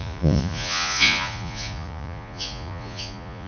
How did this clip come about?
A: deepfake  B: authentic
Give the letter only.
A